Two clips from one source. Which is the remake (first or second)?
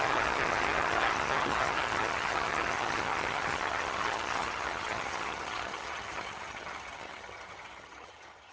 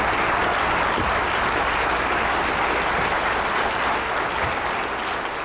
first